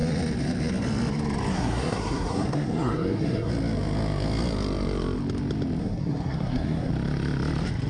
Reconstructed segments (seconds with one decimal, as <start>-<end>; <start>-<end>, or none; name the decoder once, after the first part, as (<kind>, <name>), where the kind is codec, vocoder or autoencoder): 1.5-3.5 (codec, SNAC); 5.8-6.9